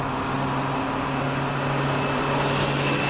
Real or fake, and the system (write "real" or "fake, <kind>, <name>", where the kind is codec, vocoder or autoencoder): real